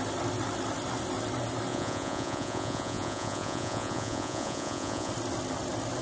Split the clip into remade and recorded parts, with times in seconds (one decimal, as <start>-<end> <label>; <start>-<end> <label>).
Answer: 0.0-1.7 recorded; 1.7-5.1 remade; 5.1-6.0 recorded